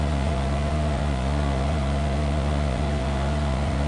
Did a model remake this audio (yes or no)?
yes